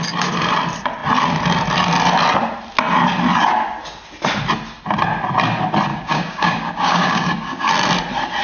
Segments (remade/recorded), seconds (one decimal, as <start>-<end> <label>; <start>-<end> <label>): 0.0-5.9 recorded; 5.9-7.7 remade; 7.7-8.4 recorded